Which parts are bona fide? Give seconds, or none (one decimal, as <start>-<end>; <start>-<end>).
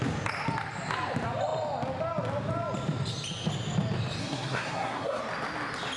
0.0-4.2; 5.2-6.0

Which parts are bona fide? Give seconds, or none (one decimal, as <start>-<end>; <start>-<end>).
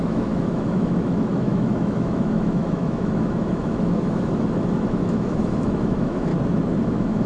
6.3-6.8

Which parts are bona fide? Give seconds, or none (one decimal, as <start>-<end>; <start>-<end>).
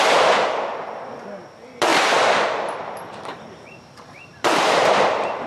0.0-1.9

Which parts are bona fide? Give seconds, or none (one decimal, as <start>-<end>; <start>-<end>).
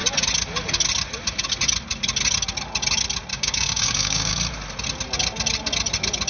0.0-3.3; 4.3-6.3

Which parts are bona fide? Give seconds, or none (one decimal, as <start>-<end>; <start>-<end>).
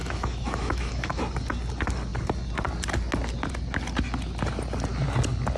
1.2-5.6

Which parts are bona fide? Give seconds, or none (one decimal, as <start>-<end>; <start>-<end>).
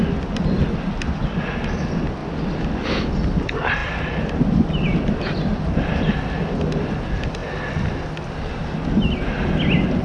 0.0-10.0